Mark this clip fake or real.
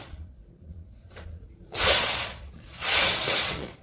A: fake